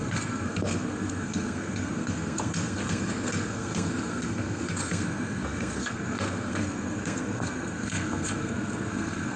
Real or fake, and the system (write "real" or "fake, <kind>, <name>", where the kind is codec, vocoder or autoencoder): fake, codec, SNAC